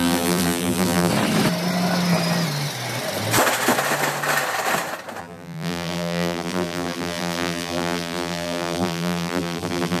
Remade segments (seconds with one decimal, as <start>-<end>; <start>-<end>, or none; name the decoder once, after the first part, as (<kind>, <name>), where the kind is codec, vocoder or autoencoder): 0.0-1.1 (vocoder, BigVGAN v2); 5.2-10.0